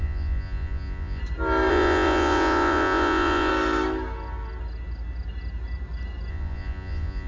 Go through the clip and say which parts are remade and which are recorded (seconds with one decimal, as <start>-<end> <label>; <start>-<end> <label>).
0.0-1.2 remade; 1.2-1.7 recorded; 1.7-3.5 remade; 3.5-6.3 recorded; 6.3-7.3 remade